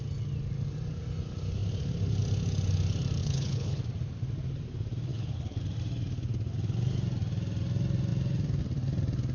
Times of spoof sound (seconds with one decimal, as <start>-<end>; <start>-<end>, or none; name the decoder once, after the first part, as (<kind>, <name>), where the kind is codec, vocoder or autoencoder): 3.2-3.8 (codec, HILCodec); 5.1-5.6